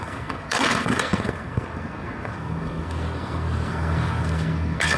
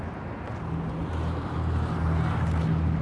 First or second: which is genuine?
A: second